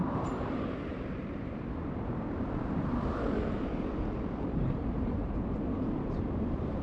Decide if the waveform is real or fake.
fake